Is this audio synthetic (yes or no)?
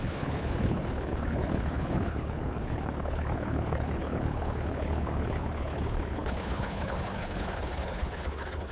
yes